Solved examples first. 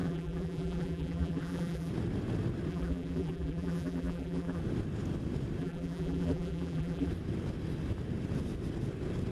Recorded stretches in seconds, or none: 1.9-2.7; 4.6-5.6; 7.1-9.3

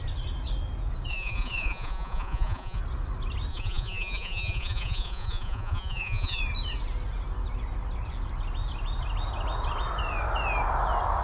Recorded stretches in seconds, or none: 0.0-1.1; 2.8-3.5; 6.4-11.2

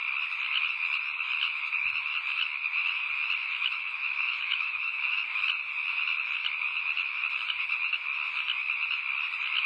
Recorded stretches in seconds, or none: 0.0-3.4; 5.4-9.7

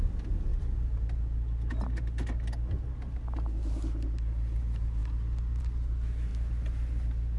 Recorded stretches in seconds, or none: 0.0-7.4